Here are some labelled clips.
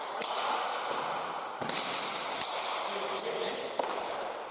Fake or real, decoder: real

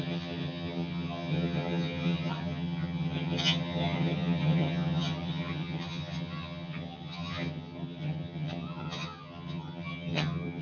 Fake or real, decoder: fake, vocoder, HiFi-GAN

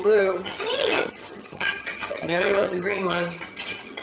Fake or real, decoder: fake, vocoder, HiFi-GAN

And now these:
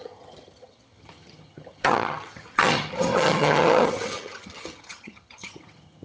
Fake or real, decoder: fake, vocoder, HiFi-GAN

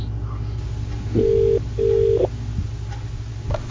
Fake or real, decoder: real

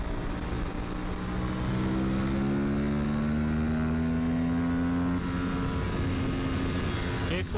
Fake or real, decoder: real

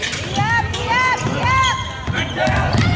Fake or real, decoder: real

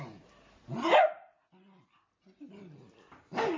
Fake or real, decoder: real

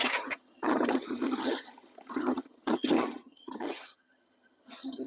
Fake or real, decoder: fake, vocoder, HiFi-GAN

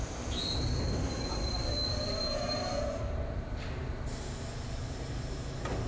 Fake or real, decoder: real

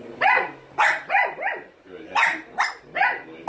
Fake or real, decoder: real